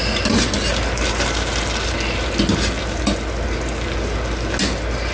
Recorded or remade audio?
recorded